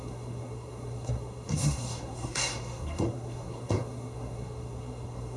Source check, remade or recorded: remade